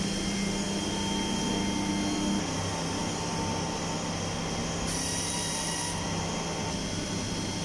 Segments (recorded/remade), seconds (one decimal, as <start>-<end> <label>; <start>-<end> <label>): 0.0-7.6 recorded